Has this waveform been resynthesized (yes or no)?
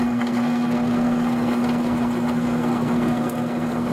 yes